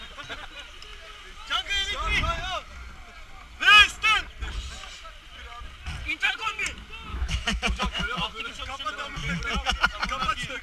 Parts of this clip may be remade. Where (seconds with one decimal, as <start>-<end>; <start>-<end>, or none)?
7.1-8.5